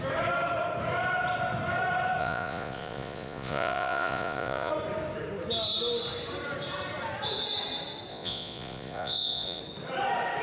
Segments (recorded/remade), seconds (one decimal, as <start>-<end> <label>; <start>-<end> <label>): 0.0-2.2 recorded; 2.2-4.7 remade; 4.7-8.1 recorded; 8.1-9.6 remade; 9.6-10.4 recorded